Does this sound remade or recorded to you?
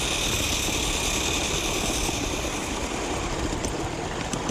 recorded